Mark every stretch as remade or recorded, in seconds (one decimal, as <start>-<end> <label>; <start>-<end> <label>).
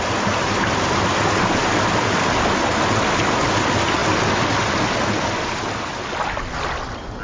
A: 0.0-7.2 recorded